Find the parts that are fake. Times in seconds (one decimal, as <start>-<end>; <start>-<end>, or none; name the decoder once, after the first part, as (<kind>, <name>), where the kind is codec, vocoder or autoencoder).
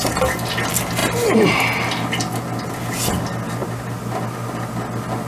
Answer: none